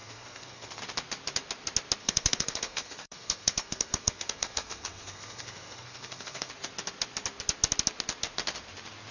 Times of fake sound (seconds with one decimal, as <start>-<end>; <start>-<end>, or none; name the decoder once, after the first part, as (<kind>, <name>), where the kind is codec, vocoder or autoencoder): 0.0-0.8 (codec, SNAC); 2.0-6.5